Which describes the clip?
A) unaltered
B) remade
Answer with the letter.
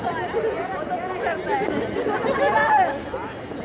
A